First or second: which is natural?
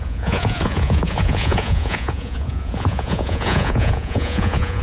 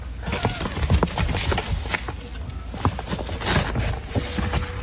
second